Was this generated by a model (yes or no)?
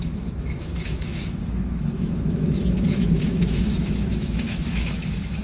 yes